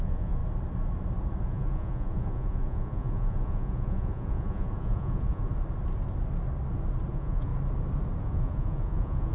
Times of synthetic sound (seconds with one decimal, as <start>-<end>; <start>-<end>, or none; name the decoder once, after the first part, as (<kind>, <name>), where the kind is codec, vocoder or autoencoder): 0.0-0.4 (vocoder, Vocos); 1.4-5.5; 7.1-7.5; 8.2-9.3